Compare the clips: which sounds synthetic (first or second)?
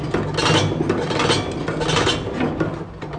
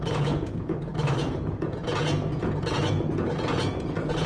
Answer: second